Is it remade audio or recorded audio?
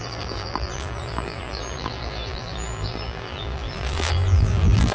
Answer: remade